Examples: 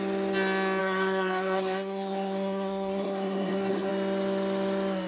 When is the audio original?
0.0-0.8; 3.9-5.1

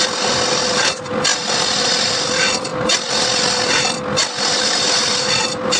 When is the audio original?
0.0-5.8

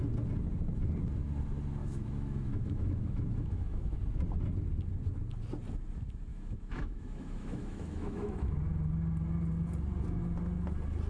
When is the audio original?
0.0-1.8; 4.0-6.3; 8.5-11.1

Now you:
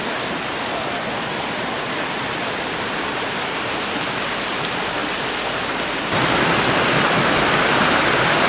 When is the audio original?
0.0-8.5

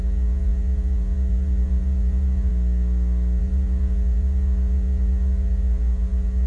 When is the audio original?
2.5-3.4

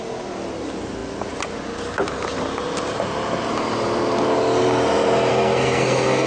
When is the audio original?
0.0-5.3

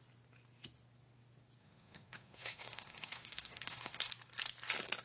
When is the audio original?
0.0-1.6; 4.1-5.0